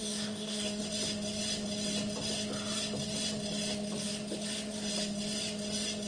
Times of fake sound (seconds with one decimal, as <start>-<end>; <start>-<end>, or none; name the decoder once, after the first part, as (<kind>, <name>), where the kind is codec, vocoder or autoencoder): 0.0-0.8 (codec, DAC)